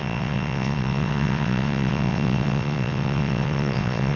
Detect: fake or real fake